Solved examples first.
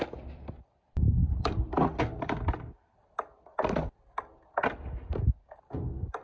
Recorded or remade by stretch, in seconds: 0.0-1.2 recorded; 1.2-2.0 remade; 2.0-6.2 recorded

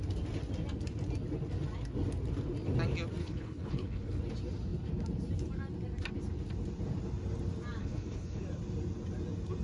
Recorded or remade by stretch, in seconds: 0.0-3.2 recorded; 3.2-4.2 remade; 4.2-7.8 recorded; 7.8-8.4 remade; 8.4-9.6 recorded

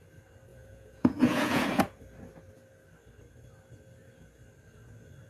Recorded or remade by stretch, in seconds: 0.0-0.5 recorded; 0.5-1.8 remade; 1.8-5.3 recorded

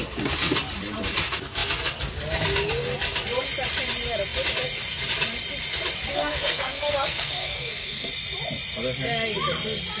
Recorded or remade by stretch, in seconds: 0.0-6.1 recorded; 6.1-8.1 remade; 8.1-10.0 recorded

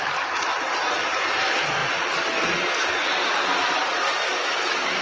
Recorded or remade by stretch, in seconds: 0.0-5.0 recorded

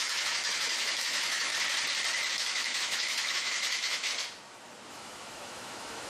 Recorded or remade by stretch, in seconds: 0.0-1.5 remade; 1.5-2.3 recorded; 2.3-4.1 remade; 4.1-4.9 recorded; 4.9-6.1 remade

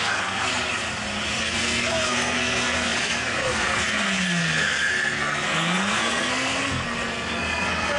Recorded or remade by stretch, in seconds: 0.0-0.5 remade; 0.5-1.4 recorded; 1.4-8.0 remade

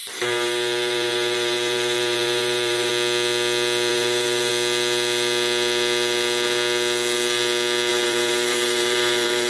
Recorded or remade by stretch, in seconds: 0.0-2.9 remade; 2.9-3.9 recorded; 3.9-4.5 remade; 4.5-7.9 recorded; 7.9-9.5 remade